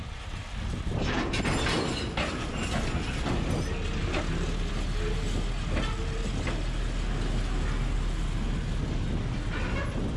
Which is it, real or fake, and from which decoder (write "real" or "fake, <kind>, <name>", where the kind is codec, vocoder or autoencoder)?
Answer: real